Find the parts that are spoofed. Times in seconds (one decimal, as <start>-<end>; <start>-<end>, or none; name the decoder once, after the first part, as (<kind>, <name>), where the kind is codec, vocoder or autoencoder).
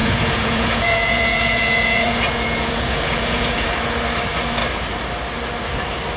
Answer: 0.0-3.7 (vocoder, Vocos)